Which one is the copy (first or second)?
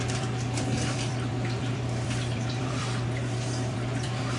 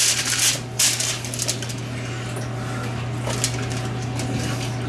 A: first